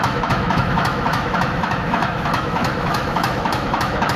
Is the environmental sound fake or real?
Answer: fake